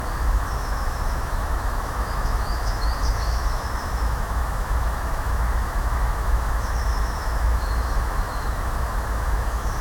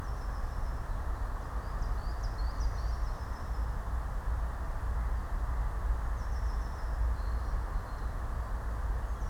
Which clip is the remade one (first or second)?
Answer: first